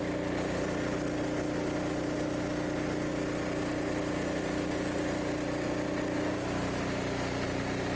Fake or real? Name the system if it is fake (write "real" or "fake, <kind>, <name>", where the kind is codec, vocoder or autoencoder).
real